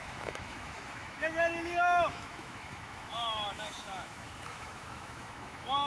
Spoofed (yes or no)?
yes